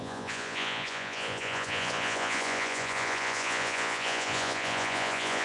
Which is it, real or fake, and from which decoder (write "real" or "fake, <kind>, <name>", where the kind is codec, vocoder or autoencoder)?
fake, vocoder, Vocos